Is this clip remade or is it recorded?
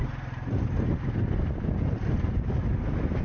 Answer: recorded